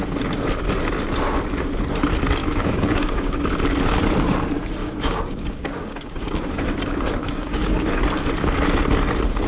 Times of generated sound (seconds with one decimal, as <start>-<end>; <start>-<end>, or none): 2.4-3.4; 4.8-6.6; 7.2-7.9